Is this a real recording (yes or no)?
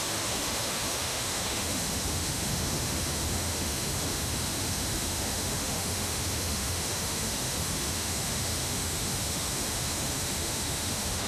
no